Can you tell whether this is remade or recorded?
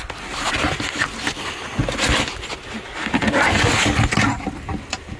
recorded